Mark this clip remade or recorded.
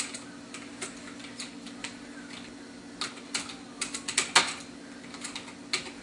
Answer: recorded